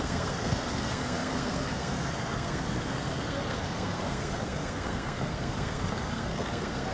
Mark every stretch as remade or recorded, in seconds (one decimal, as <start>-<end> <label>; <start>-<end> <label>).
0.0-6.9 remade